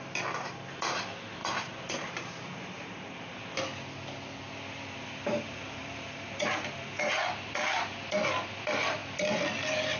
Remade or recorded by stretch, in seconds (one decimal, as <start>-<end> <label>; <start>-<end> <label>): 0.0-1.4 recorded; 1.4-3.6 remade; 3.6-5.0 recorded; 5.0-7.0 remade; 7.0-10.0 recorded